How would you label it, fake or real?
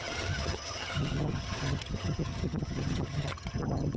fake